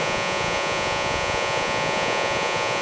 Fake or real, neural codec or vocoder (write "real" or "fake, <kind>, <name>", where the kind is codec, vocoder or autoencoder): fake, vocoder, Vocos